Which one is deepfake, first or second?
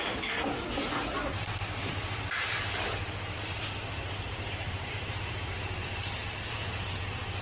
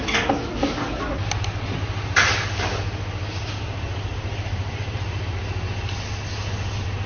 first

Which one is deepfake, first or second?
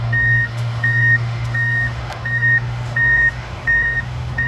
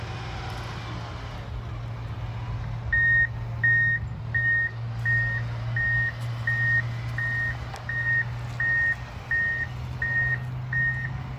first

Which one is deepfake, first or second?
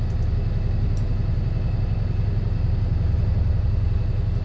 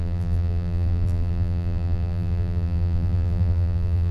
second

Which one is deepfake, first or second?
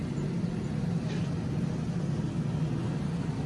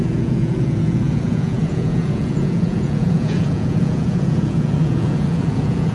second